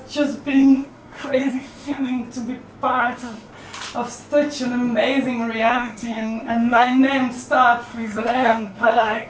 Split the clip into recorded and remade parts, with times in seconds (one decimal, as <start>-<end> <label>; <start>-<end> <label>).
0.0-0.5 recorded; 0.5-2.2 remade; 2.2-2.9 recorded; 2.9-3.5 remade; 3.5-5.6 recorded; 5.6-7.0 remade; 7.0-7.9 recorded; 7.9-9.3 remade